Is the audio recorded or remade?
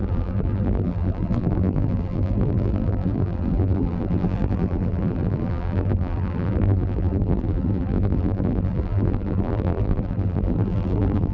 remade